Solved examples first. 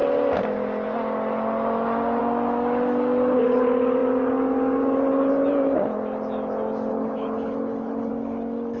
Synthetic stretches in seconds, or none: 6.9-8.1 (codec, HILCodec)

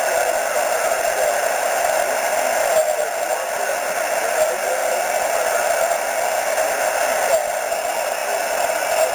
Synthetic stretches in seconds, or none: none